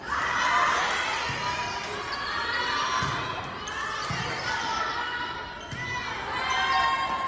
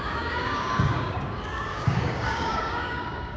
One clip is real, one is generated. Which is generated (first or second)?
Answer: second